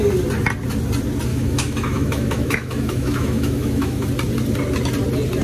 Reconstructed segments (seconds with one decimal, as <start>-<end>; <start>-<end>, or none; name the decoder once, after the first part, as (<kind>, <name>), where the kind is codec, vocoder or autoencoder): 1.3-4.1 (autoencoder, DAC-VAE)